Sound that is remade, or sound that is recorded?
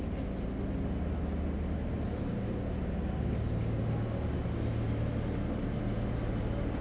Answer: recorded